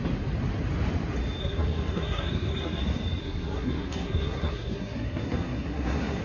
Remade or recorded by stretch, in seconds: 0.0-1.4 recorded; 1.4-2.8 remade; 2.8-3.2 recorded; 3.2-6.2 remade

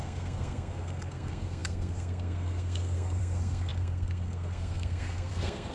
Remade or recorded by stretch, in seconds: 0.0-5.7 remade

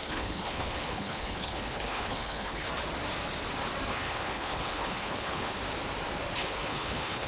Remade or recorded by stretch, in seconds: 0.0-2.7 remade; 2.7-3.9 recorded; 3.9-5.5 remade; 5.5-6.4 recorded; 6.4-7.3 remade

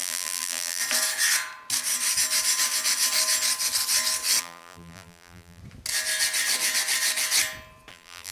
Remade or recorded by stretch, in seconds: 0.0-0.8 remade; 0.8-4.4 recorded; 4.4-5.6 remade; 5.6-7.9 recorded; 7.9-8.3 remade

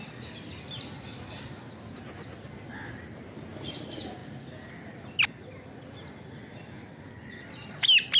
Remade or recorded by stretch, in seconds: 0.0-8.2 recorded

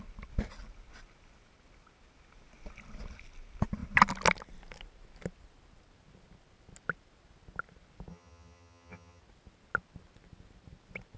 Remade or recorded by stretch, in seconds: 0.0-8.1 recorded; 8.1-9.2 remade; 9.2-11.2 recorded

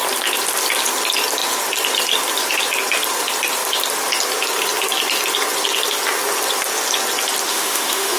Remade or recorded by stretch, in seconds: 0.0-7.5 recorded; 7.5-8.2 remade

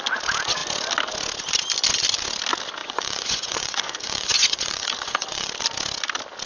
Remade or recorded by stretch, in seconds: 0.0-2.8 recorded; 2.8-5.5 remade; 5.5-6.5 recorded